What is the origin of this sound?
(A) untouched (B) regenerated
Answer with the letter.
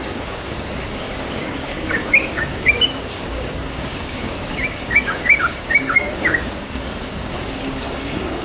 B